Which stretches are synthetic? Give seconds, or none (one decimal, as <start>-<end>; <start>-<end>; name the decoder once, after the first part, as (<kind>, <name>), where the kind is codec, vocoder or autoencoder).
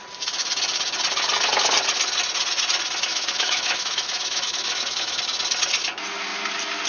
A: 3.1-5.2 (autoencoder, DAC-VAE)